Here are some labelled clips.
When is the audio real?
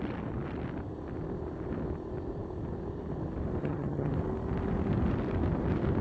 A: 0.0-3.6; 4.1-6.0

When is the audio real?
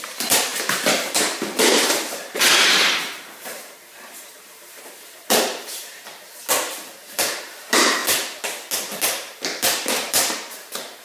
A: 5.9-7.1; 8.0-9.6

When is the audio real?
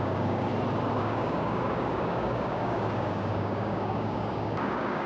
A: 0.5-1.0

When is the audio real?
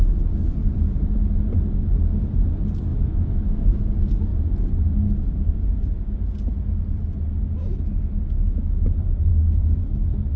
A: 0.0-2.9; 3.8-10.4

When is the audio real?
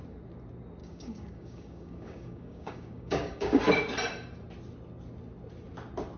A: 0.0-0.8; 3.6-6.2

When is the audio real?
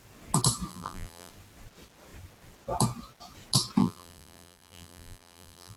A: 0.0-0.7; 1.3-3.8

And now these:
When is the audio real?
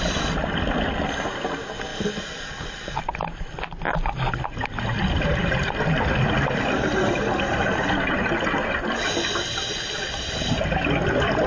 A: 0.0-11.5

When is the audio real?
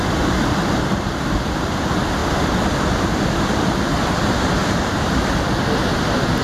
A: none